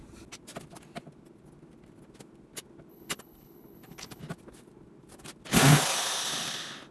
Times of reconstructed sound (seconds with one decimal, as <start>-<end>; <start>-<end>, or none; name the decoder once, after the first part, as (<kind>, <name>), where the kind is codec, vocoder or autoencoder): 2.9-4.2 (codec, HILCodec)